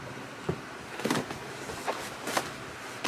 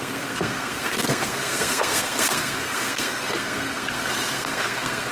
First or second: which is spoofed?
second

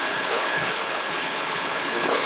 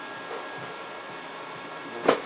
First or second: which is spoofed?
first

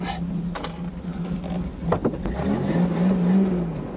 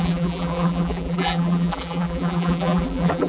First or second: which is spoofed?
second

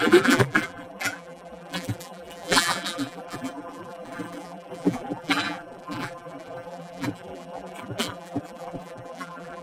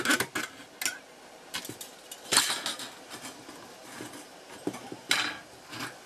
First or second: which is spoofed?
first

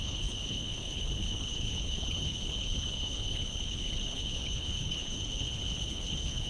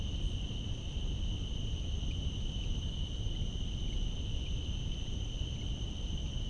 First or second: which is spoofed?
first